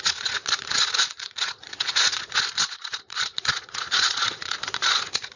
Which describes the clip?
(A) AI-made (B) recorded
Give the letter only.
A